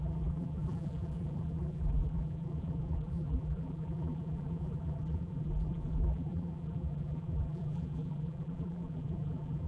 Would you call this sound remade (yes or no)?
yes